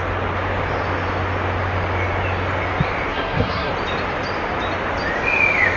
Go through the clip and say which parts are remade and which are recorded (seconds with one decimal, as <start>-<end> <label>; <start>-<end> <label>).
0.0-3.1 recorded; 3.1-3.7 remade; 3.7-5.8 recorded